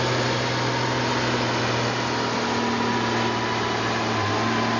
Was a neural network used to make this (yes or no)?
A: no